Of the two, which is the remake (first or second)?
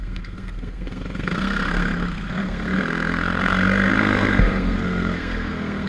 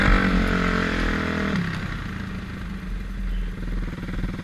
first